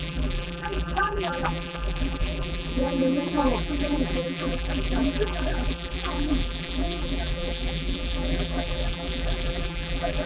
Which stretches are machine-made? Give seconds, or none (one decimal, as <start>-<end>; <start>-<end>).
0.0-10.3